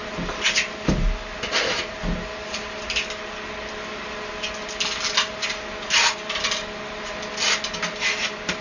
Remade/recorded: recorded